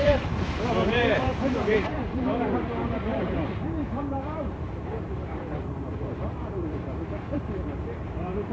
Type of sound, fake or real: fake